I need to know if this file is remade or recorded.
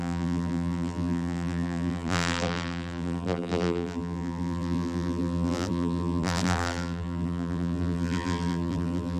remade